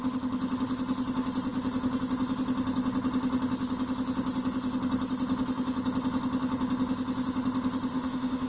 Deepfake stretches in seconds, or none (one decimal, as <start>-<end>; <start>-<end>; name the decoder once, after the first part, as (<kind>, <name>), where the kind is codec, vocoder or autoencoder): 7.9-8.5 (autoencoder, DAC-VAE)